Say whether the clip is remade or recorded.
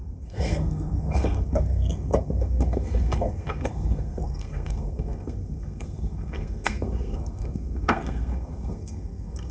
remade